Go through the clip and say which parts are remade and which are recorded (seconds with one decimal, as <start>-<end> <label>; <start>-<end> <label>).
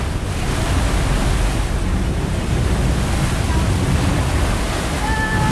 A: 0.0-5.5 recorded